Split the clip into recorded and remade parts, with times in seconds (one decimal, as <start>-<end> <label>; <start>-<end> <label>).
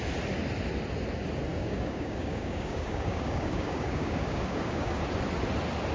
0.0-1.5 recorded; 1.5-5.0 remade; 5.0-5.9 recorded